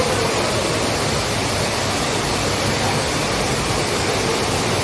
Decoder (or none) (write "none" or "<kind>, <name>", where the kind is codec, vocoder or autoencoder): none